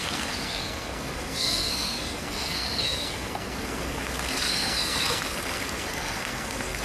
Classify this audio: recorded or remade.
remade